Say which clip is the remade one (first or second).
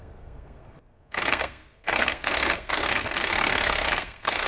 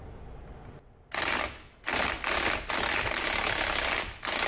first